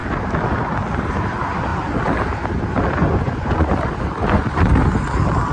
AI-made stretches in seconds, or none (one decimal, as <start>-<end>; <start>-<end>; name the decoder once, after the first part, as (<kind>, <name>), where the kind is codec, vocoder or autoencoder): 3.0-3.7 (vocoder, Vocos); 4.2-4.7